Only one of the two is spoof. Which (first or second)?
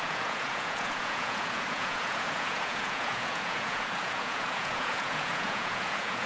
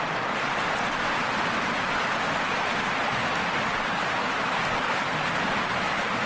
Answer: first